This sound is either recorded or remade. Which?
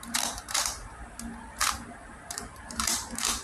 remade